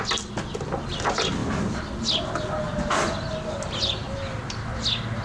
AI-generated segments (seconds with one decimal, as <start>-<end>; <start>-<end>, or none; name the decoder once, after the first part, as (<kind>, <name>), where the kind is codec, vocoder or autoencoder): none